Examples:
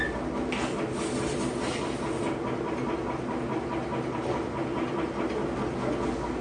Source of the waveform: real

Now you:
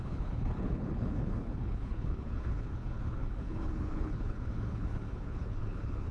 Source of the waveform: fake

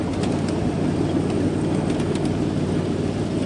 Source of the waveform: real